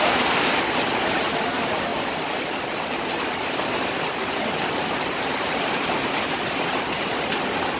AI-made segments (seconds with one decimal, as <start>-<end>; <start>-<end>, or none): 4.2-6.2